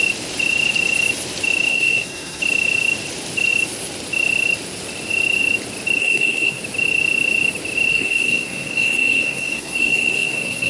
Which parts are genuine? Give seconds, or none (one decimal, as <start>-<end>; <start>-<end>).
0.0-1.7; 2.4-6.0; 6.6-7.9